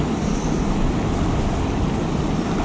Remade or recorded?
recorded